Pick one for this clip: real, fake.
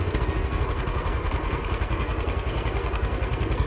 fake